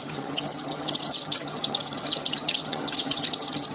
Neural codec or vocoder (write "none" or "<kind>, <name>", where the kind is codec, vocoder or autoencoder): vocoder, HiFi-GAN